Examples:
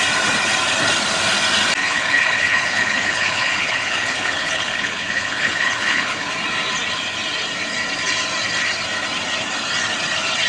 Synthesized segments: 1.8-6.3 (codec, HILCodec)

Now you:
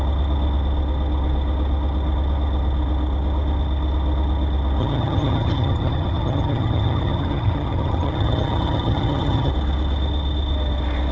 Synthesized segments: 4.8-9.5 (vocoder, HiFi-GAN)

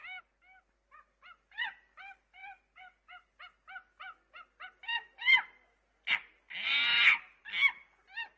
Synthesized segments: none

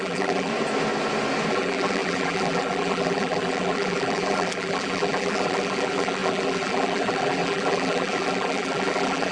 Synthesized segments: 0.0-0.5 (vocoder, BigVGAN v2); 1.5-9.3

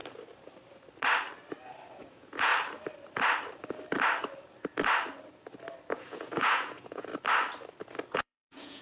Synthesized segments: 2.0-2.5 (vocoder, Vocos); 5.9-7.1; 8.1-8.8

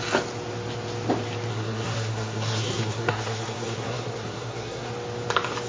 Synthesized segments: 1.5-4.9 (codec, SNAC)

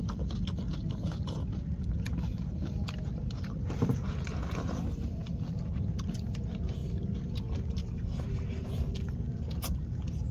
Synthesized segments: none

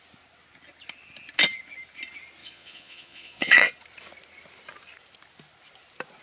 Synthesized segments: 2.4-3.7 (vocoder, Vocos)